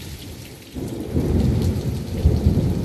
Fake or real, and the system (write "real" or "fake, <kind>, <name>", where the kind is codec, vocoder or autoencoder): fake, vocoder, BigVGAN v2